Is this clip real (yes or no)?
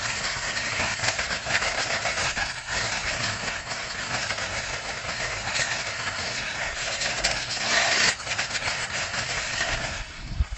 no